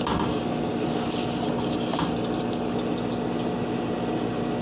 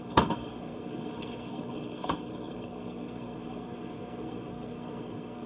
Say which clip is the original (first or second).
first